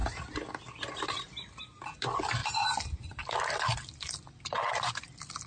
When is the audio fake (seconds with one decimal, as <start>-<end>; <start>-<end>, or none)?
none